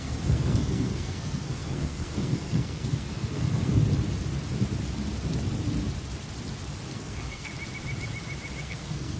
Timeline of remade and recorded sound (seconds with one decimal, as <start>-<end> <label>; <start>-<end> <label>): 0.0-3.8 remade; 3.8-6.9 recorded; 6.9-7.5 remade; 7.5-8.6 recorded; 8.6-9.2 remade